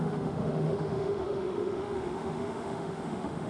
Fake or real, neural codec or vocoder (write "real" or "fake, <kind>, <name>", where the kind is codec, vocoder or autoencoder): fake, autoencoder, DAC-VAE